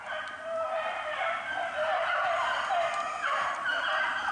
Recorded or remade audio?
recorded